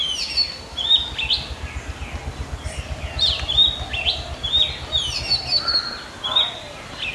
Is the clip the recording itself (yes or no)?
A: yes